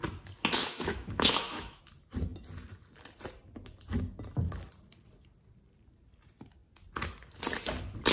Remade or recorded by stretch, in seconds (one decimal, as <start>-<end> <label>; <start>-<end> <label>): 0.0-0.6 recorded; 0.6-1.8 remade; 1.8-8.1 recorded